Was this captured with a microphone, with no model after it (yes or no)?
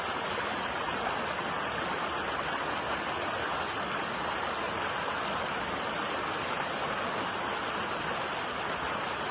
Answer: yes